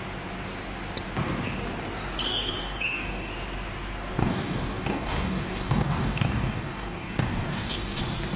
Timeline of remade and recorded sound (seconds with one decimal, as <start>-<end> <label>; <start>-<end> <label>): 0.0-2.3 recorded; 2.3-3.3 remade; 3.3-4.2 recorded; 4.2-8.0 remade; 8.0-8.4 recorded